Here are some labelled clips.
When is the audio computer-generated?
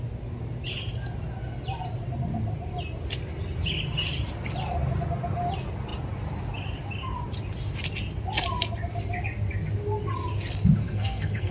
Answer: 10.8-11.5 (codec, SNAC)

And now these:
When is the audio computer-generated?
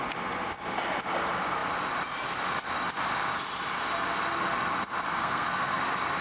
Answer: 5.1-5.8 (codec, SNAC)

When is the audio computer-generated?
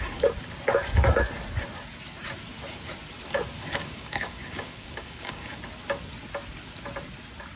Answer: 3.8-5.6 (codec, DAC)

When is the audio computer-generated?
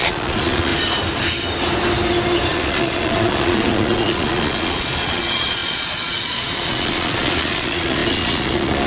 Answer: 0.0-0.7 (vocoder, Vocos); 2.5-8.9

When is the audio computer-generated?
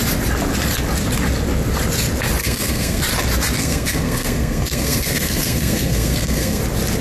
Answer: 2.4-3.0 (codec, SNAC); 3.6-6.6